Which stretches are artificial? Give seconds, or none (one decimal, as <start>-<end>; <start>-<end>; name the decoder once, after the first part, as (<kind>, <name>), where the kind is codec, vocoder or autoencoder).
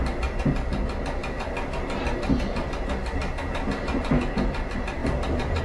5.0-5.6 (vocoder, BigVGAN v2)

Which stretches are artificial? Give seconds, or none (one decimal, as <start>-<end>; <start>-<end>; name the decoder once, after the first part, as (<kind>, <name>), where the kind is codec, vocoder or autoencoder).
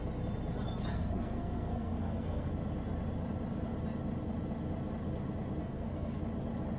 0.9-2.5 (codec, SNAC); 5.6-6.2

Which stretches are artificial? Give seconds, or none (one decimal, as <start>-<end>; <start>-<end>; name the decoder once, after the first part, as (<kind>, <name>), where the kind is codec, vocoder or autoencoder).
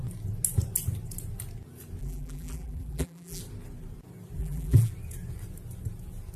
2.0-3.4 (vocoder, BigVGAN v2); 4.4-4.9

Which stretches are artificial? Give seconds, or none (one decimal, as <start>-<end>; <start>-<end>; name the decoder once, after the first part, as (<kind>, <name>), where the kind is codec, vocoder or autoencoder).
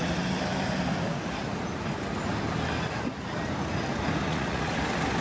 4.3-4.8 (vocoder, Vocos)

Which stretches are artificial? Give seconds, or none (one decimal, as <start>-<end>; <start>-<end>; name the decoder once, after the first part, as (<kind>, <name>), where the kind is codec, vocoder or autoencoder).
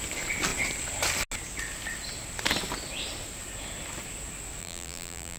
4.6-5.4 (vocoder, BigVGAN v2)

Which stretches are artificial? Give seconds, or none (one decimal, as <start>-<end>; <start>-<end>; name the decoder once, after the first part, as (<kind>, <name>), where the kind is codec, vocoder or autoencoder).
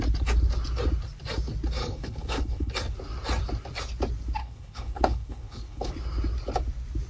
1.8-2.7 (codec, HILCodec); 4.4-5.9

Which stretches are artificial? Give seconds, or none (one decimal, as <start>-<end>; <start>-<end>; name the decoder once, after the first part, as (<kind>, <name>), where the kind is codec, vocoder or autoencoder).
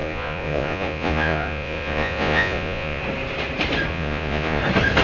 0.0-3.0 (vocoder, Vocos); 3.9-4.6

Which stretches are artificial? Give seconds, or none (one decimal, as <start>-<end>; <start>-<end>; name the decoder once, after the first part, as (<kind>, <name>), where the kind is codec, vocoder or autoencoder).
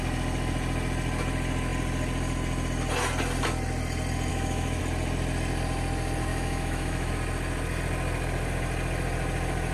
4.3-4.8 (autoencoder, DAC-VAE); 6.3-7.1